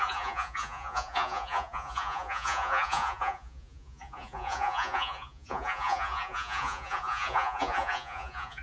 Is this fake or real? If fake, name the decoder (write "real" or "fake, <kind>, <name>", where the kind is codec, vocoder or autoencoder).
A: fake, vocoder, Vocos